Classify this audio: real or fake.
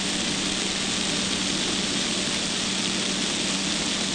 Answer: real